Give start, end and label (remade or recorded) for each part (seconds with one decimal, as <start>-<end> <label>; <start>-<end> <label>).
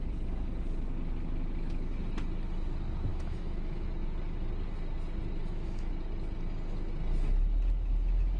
0.0-3.1 recorded; 3.1-3.9 remade; 3.9-5.4 recorded; 5.4-5.9 remade; 5.9-8.4 recorded